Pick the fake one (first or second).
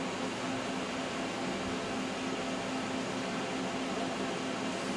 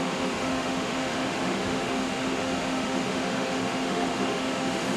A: second